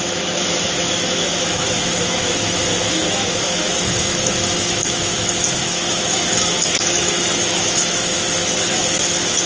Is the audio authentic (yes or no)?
no